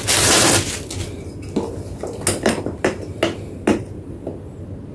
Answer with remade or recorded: recorded